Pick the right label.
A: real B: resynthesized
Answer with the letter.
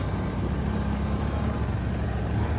A